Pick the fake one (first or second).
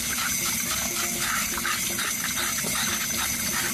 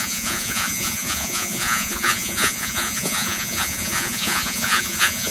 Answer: second